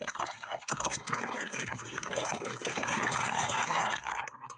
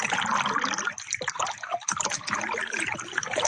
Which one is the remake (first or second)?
first